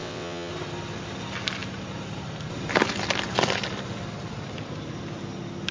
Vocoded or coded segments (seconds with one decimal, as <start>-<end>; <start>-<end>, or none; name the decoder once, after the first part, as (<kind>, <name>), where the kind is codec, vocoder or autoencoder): 0.0-0.5 (vocoder, WaveNeXt)